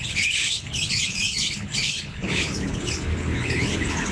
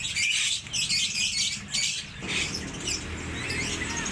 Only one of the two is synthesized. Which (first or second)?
first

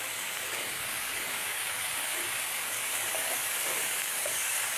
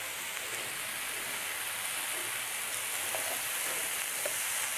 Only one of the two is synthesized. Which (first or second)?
first